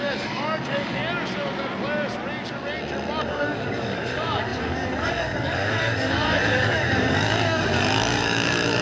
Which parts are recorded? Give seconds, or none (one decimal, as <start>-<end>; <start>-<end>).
1.0-3.3